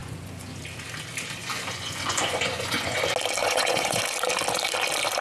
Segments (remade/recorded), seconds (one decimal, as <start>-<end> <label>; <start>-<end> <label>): 0.0-0.6 remade; 0.6-1.4 recorded; 1.4-3.0 remade; 3.0-3.4 recorded; 3.4-4.0 remade; 4.0-5.2 recorded

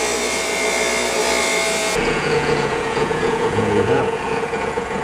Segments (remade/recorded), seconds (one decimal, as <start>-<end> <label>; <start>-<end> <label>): 0.0-1.8 recorded; 1.8-5.0 remade

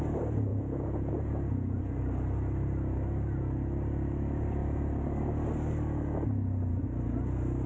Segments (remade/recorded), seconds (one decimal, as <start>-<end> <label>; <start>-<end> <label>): 0.0-0.5 recorded; 0.5-1.8 remade; 1.8-7.7 recorded

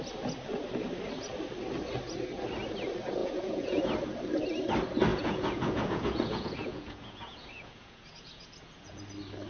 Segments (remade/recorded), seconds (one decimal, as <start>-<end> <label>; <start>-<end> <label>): 0.0-3.2 recorded; 3.2-3.8 remade; 3.8-5.1 recorded; 5.1-9.0 remade; 9.0-9.5 recorded

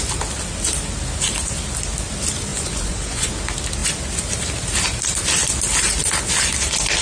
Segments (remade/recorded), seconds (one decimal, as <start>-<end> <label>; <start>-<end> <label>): 0.0-2.5 recorded; 2.5-3.3 remade; 3.3-7.0 recorded

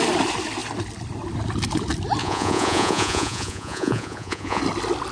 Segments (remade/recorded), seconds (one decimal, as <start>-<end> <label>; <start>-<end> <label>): 0.0-2.2 recorded; 2.2-4.6 remade; 4.6-5.1 recorded